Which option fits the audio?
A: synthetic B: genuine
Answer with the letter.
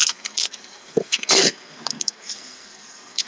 A